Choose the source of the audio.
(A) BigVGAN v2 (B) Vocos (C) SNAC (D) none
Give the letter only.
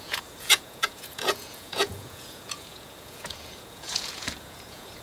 B